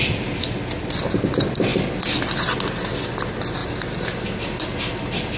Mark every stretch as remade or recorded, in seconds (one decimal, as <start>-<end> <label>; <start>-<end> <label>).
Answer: 0.0-5.4 recorded